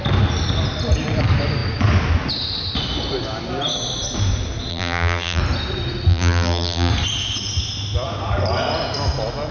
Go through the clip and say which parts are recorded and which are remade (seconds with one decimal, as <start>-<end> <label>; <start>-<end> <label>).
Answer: 0.0-4.7 recorded; 4.7-5.4 remade; 5.4-6.1 recorded; 6.1-6.9 remade; 6.9-9.5 recorded